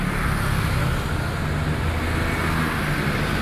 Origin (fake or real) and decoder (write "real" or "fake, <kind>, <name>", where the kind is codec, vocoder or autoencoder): real